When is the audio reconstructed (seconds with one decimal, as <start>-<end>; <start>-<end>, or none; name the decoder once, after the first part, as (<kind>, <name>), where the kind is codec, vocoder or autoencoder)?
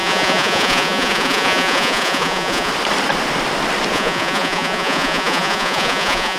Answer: 0.0-2.7 (vocoder, Vocos); 3.9-6.4